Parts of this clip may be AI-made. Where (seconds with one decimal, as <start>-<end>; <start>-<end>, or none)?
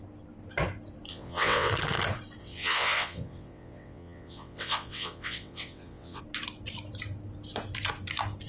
1.1-1.7; 2.4-6.2